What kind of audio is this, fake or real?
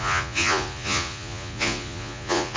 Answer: fake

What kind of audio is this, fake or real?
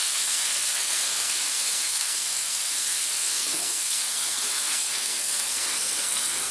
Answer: fake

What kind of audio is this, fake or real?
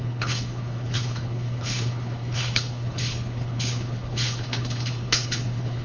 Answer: fake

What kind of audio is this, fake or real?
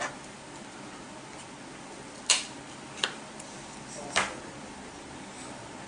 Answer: real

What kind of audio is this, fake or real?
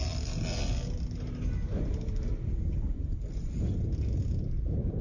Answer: real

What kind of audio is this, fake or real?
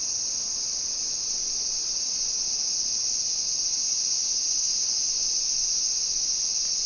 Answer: real